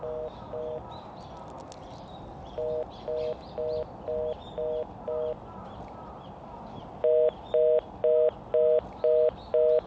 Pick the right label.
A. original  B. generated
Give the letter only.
A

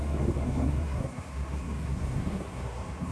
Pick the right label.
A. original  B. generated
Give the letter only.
B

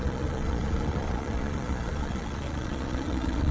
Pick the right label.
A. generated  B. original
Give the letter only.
A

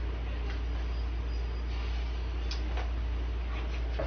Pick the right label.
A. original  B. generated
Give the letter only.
A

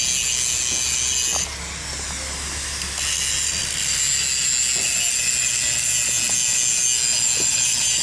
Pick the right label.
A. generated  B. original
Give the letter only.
B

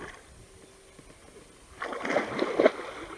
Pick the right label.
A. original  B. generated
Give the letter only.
A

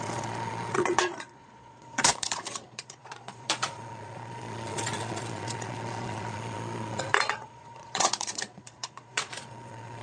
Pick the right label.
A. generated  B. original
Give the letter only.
A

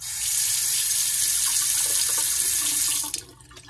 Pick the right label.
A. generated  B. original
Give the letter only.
B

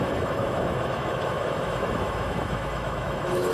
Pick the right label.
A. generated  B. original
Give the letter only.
A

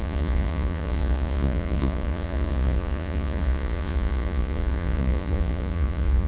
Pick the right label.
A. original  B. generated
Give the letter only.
B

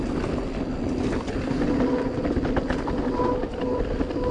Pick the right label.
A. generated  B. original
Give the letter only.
B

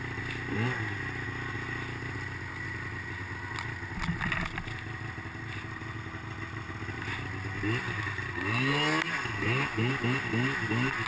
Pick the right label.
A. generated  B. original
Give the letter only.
B